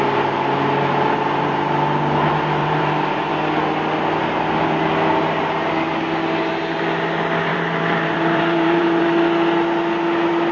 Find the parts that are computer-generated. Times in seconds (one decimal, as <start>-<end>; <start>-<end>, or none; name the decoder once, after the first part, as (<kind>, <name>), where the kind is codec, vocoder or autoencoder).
2.6-3.3 (vocoder, BigVGAN v2); 7.5-9.0